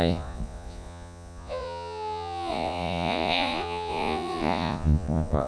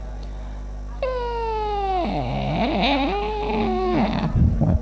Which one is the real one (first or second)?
second